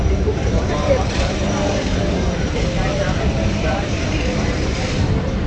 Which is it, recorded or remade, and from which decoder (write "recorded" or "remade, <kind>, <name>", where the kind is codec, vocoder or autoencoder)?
remade, vocoder, BigVGAN v2